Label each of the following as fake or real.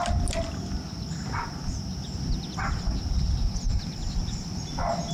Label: real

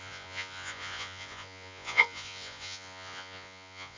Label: fake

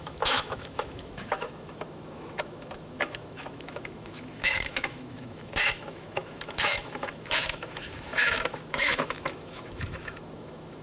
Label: fake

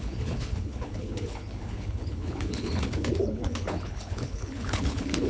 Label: fake